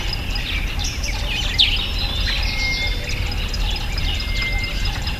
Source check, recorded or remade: recorded